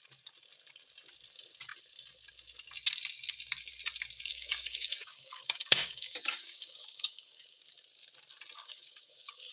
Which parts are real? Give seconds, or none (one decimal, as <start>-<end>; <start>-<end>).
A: 0.0-4.3; 7.6-8.6